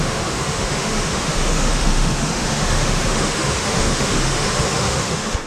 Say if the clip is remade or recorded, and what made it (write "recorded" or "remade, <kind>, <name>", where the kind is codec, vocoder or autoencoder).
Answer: remade, autoencoder, DAC-VAE